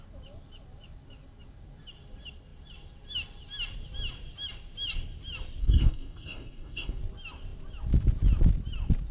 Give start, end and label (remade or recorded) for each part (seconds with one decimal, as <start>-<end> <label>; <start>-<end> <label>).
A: 0.0-5.6 recorded; 5.6-7.0 remade; 7.0-9.1 recorded

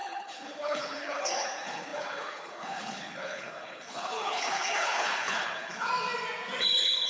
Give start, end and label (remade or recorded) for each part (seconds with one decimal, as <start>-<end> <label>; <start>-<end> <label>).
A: 0.0-5.9 remade; 5.9-6.6 recorded; 6.6-7.1 remade

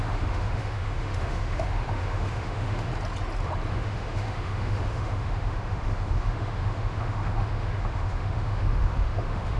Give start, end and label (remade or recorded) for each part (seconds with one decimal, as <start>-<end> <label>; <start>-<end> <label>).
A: 0.0-2.9 remade; 2.9-3.7 recorded; 3.7-9.6 remade

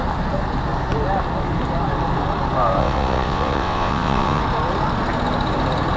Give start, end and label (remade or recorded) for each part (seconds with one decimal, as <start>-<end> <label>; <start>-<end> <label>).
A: 0.0-2.8 recorded; 2.8-4.4 remade; 4.4-6.0 recorded

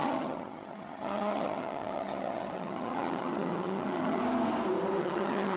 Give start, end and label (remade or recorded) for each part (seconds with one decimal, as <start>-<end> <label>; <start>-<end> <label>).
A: 0.0-4.2 remade; 4.2-5.0 recorded; 5.0-5.6 remade